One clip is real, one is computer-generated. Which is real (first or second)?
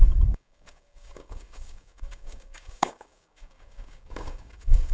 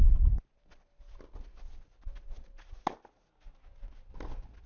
second